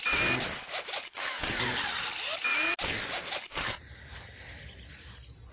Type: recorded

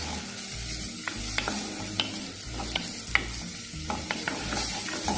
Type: recorded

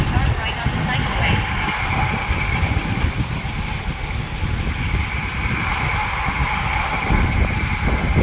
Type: recorded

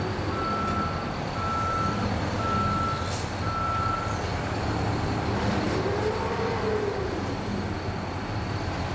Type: recorded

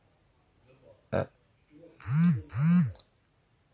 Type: recorded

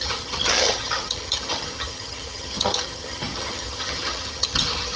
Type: remade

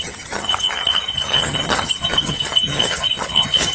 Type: remade